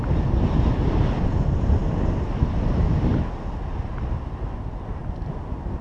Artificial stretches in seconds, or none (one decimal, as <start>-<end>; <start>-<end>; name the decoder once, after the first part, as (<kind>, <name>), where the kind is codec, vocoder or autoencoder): none